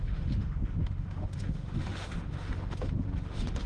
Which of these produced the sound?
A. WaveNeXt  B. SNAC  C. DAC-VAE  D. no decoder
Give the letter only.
C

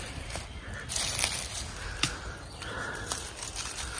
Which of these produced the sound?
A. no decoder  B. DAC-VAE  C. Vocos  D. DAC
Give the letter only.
A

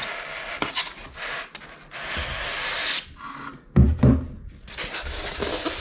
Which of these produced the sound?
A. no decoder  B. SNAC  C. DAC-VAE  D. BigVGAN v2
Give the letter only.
A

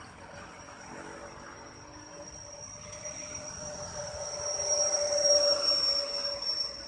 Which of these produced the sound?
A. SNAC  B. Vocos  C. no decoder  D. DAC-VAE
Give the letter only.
C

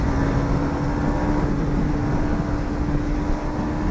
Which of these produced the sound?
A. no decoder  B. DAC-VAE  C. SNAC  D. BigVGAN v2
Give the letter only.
A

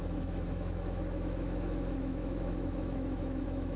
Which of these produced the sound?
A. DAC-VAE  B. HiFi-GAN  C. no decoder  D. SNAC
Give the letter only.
A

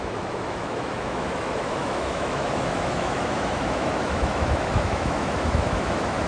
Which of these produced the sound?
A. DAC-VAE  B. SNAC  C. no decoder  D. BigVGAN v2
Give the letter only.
A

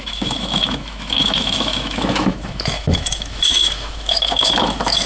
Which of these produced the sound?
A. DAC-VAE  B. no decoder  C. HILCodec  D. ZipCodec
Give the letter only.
A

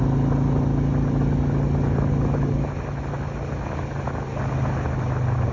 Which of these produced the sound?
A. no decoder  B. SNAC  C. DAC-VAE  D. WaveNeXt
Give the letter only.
A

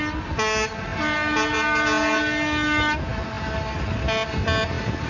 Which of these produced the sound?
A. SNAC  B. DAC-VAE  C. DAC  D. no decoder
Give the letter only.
D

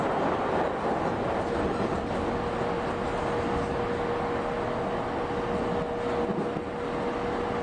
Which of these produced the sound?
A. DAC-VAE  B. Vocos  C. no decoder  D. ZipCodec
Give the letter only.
C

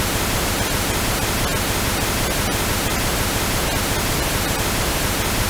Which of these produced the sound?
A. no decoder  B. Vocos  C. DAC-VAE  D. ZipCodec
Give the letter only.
A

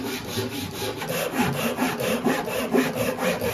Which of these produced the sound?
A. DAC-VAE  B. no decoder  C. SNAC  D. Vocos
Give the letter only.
B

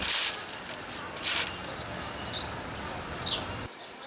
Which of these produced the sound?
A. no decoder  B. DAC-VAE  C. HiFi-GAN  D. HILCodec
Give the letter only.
A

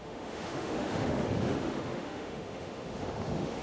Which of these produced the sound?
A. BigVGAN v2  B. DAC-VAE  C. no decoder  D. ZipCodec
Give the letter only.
B